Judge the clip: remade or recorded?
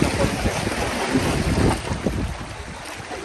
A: recorded